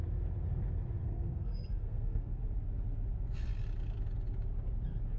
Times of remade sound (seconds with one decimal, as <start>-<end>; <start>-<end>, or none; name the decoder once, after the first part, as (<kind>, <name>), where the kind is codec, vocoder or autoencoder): 1.0-2.4 (codec, SNAC)